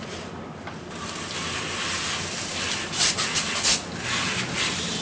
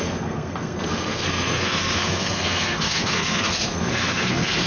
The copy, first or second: second